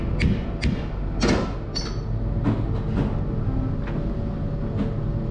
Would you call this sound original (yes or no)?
yes